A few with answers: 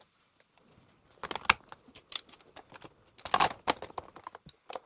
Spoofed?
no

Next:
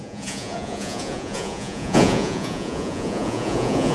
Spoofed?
yes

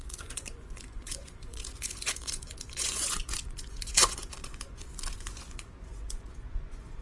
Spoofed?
yes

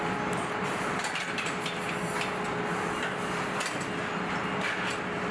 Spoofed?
no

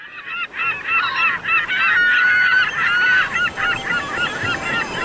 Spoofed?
no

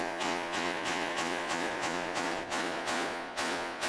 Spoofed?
yes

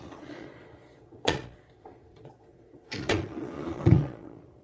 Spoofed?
yes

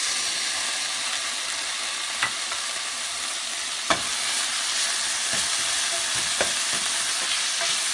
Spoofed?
no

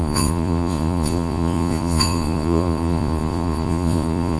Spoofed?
yes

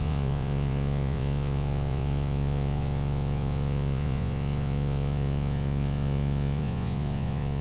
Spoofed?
yes